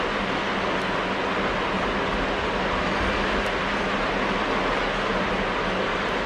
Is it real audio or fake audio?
real